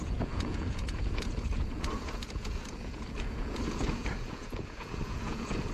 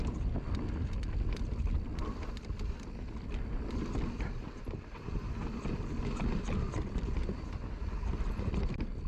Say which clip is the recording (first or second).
second